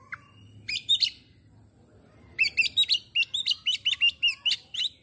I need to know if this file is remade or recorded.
recorded